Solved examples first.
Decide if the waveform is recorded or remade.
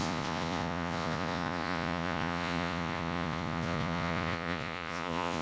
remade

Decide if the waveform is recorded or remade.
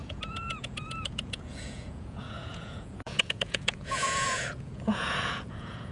remade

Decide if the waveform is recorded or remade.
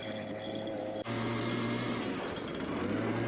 recorded